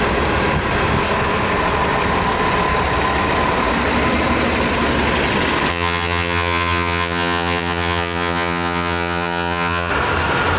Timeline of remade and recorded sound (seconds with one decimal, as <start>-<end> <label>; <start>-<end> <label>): 0.0-5.7 recorded; 5.7-9.9 remade; 9.9-10.6 recorded